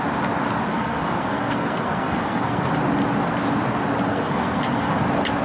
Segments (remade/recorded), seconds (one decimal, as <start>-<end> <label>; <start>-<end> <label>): 0.0-0.7 recorded; 0.7-2.7 remade; 2.7-4.1 recorded; 4.1-5.0 remade; 5.0-5.4 recorded

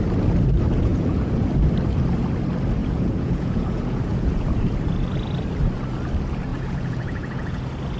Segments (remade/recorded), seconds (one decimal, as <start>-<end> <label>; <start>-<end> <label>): 0.0-0.9 recorded; 0.9-1.5 remade; 1.5-2.8 recorded; 2.8-4.7 remade; 4.7-6.5 recorded; 6.5-7.6 remade; 7.6-8.0 recorded

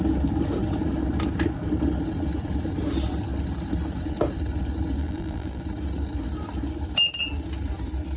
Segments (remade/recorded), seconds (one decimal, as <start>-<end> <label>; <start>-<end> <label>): 0.0-5.0 recorded; 5.0-5.6 remade; 5.6-8.2 recorded

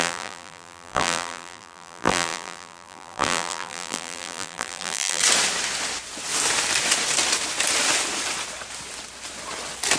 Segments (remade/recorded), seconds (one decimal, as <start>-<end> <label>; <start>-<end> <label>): 0.0-5.2 remade; 5.2-10.0 recorded

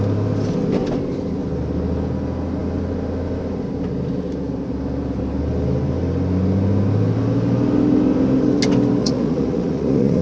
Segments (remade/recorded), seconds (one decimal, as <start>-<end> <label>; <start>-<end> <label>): 0.0-9.0 recorded; 9.0-10.2 remade

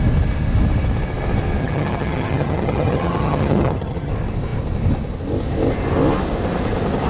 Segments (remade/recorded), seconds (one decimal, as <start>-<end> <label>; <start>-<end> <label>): 0.0-1.6 recorded; 1.6-4.1 remade; 4.1-7.1 recorded

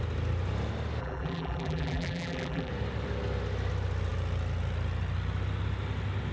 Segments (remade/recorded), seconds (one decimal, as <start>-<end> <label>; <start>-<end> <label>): 0.0-1.0 recorded; 1.0-2.7 remade; 2.7-6.3 recorded